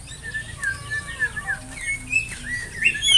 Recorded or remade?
recorded